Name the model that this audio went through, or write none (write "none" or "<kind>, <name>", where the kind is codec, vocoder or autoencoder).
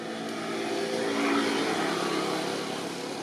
none